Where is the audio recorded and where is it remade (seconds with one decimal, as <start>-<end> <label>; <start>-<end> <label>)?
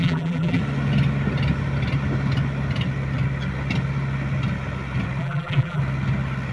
0.0-0.6 remade; 0.6-5.2 recorded; 5.2-5.8 remade; 5.8-6.5 recorded